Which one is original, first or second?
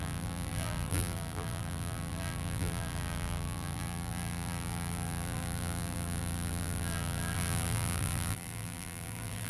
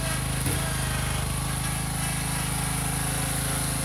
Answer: second